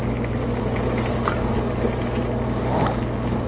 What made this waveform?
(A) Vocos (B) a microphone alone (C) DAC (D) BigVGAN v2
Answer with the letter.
B